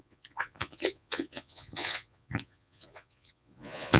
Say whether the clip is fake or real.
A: fake